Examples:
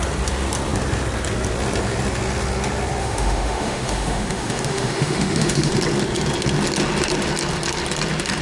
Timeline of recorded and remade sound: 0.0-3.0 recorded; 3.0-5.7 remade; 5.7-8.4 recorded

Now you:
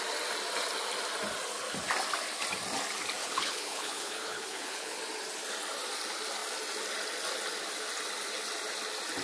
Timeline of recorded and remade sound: 0.0-3.2 recorded; 3.2-5.0 remade; 5.0-9.2 recorded

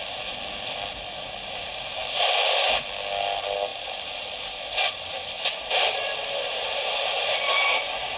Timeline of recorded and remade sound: 0.0-2.0 recorded; 2.0-2.9 remade; 2.9-3.7 recorded; 3.7-7.4 remade; 7.4-8.2 recorded

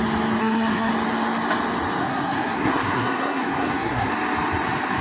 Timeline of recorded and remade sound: 0.0-0.4 recorded; 0.4-0.9 remade; 0.9-2.0 recorded; 2.0-4.1 remade; 4.1-5.0 recorded